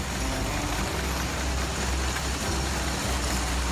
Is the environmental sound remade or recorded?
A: recorded